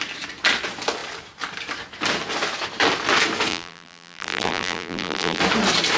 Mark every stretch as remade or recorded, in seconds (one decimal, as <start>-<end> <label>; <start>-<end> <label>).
0.0-3.5 recorded; 3.5-5.4 remade; 5.4-6.0 recorded